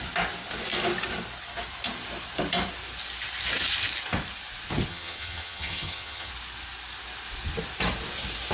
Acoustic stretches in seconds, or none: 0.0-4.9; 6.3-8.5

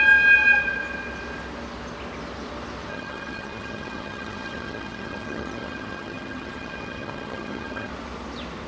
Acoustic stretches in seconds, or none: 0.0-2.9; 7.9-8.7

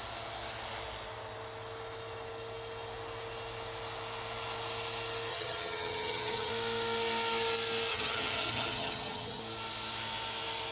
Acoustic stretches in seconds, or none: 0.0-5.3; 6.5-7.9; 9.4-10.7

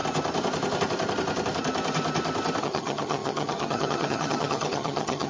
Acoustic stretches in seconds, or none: 0.0-2.6

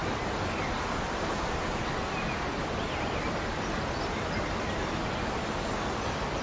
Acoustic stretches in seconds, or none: 0.0-6.4